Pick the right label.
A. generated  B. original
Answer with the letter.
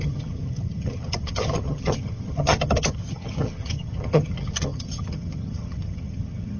A